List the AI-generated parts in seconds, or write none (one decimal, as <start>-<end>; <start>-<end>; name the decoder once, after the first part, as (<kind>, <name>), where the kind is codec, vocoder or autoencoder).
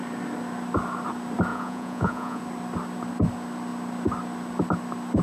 1.5-2.4 (vocoder, Vocos)